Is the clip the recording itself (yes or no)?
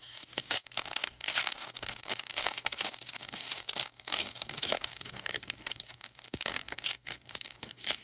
no